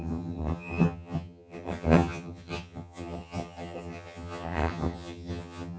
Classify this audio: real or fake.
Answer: fake